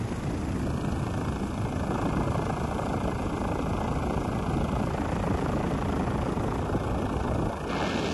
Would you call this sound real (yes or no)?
yes